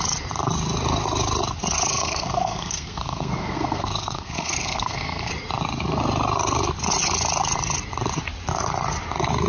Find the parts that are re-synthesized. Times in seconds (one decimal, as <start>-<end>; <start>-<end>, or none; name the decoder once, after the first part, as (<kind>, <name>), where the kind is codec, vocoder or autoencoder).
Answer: 1.9-5.3 (codec, SNAC)